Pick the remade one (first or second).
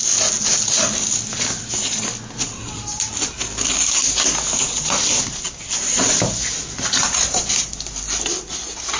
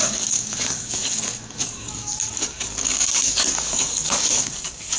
second